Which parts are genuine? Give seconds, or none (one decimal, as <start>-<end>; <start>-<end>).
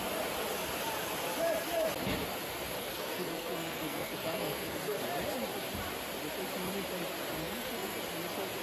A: 0.0-2.8; 5.0-7.4; 8.0-8.6